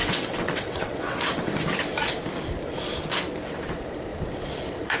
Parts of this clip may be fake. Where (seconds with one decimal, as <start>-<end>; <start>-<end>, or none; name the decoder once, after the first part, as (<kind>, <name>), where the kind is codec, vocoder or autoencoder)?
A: 0.0-1.5 (vocoder, WaveNeXt)